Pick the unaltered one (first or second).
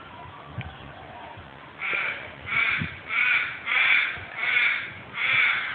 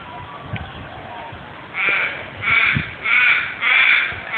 second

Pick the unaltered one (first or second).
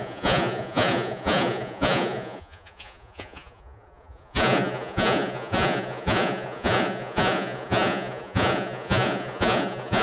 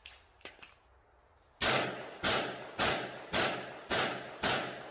second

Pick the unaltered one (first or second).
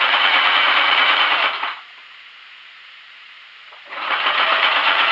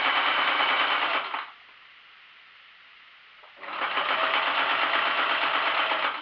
second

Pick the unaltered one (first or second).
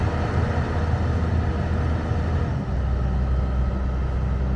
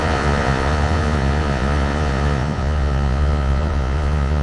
first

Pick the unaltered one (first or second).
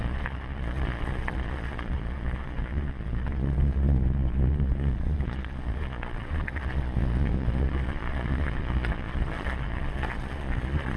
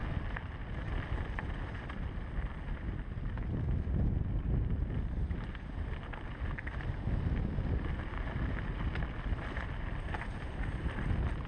second